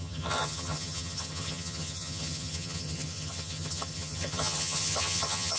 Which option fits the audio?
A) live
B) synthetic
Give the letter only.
B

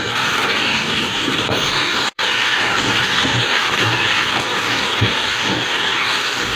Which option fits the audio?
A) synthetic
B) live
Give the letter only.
A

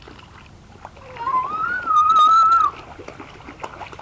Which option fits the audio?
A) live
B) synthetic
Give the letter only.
A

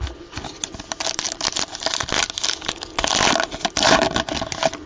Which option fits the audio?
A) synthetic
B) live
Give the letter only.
B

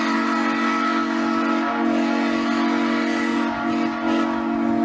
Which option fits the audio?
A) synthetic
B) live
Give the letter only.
B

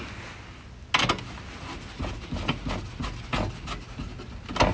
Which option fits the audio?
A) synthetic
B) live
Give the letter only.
B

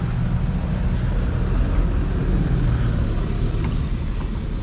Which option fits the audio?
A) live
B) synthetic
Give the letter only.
A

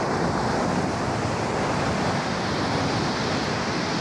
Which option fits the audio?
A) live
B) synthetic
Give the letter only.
B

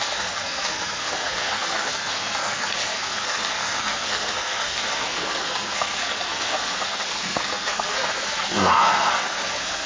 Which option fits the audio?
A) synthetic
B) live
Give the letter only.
A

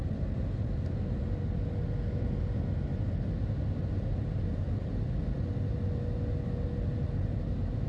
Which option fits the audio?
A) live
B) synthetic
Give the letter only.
A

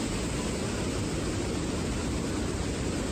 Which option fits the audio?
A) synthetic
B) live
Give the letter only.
B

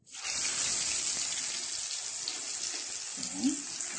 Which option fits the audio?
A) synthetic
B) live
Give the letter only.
B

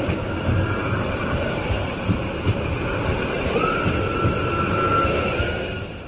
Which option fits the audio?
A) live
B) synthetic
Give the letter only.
A